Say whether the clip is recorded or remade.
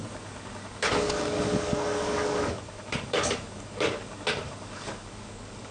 remade